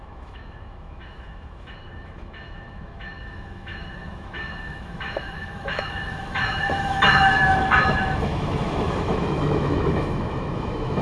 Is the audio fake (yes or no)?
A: yes